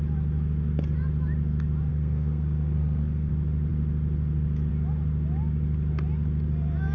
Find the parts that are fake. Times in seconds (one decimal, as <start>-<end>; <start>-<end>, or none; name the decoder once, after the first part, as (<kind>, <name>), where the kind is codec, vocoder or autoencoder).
1.9-3.3 (codec, SNAC)